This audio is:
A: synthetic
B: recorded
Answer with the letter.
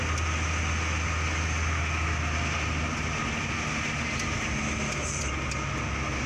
B